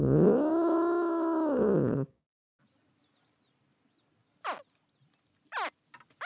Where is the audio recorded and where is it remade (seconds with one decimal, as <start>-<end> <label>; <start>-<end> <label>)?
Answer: 0.0-2.3 remade; 2.3-6.3 recorded